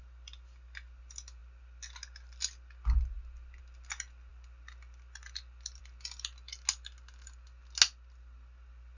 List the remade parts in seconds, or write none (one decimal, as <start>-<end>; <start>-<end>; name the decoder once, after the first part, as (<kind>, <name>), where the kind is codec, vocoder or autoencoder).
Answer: none